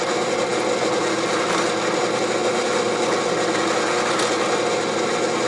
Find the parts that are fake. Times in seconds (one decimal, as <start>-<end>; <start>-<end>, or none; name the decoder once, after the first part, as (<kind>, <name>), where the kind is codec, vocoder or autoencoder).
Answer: none